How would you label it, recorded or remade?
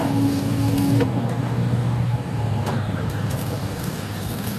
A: remade